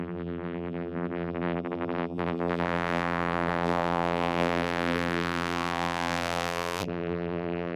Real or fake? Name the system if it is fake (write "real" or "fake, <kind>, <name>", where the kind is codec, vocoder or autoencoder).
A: fake, vocoder, BigVGAN v2